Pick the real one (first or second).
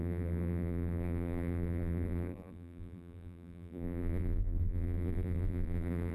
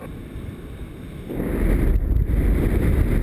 second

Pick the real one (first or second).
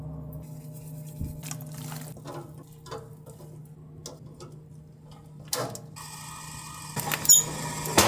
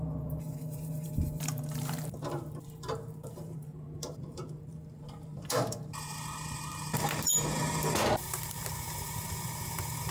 first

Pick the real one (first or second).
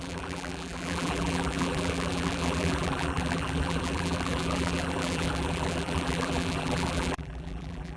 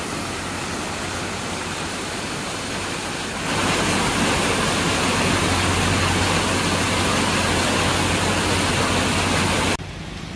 second